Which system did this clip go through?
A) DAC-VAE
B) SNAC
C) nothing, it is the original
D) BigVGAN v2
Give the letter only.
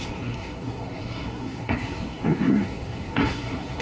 B